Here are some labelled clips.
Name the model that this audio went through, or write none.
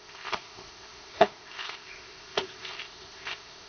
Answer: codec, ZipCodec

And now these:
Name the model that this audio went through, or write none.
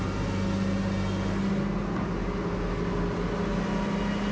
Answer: none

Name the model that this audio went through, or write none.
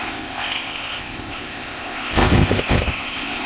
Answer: codec, ZipCodec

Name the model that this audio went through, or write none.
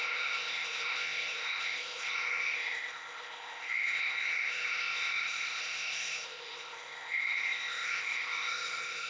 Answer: codec, ZipCodec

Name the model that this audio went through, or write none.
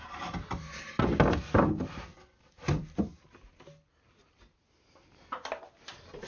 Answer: none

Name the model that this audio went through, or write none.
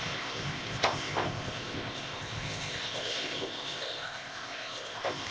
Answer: codec, ZipCodec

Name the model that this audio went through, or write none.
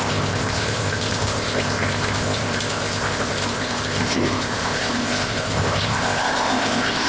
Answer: codec, ZipCodec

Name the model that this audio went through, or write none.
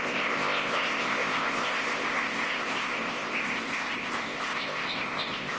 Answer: codec, ZipCodec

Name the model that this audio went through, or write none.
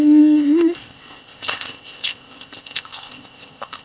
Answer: codec, ZipCodec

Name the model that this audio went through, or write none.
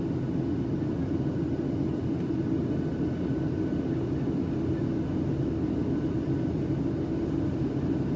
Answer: none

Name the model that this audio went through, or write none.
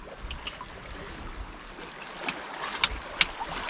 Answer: none